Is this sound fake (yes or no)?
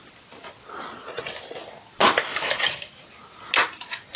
no